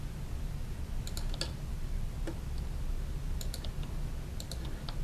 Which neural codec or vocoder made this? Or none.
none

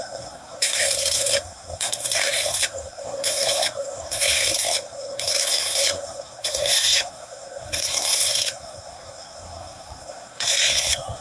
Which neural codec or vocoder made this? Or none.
codec, SNAC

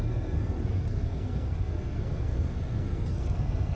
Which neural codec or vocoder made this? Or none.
codec, SNAC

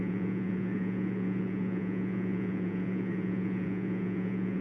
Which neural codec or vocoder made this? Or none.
vocoder, Vocos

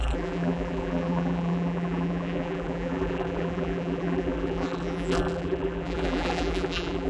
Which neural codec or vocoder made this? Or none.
vocoder, BigVGAN v2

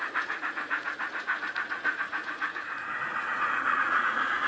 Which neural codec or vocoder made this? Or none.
vocoder, Vocos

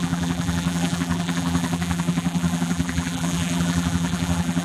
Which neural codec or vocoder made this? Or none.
vocoder, BigVGAN v2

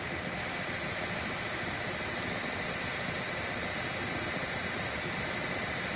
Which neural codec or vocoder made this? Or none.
none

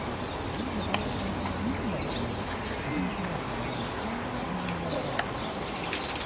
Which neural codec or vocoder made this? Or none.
none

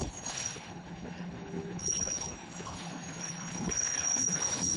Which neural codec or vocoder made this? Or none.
codec, HILCodec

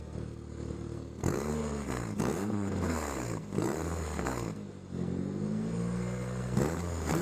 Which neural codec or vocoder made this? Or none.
codec, SNAC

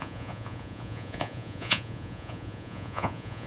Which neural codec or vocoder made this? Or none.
vocoder, Vocos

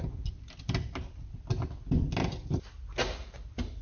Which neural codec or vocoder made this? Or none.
none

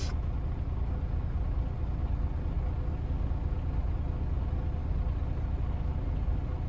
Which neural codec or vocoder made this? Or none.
none